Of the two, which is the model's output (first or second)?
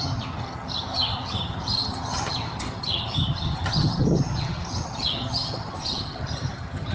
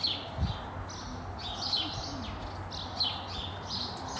first